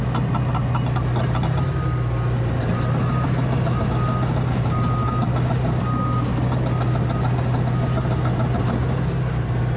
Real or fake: real